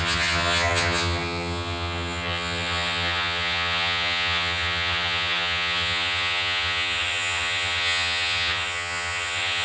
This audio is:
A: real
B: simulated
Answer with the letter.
B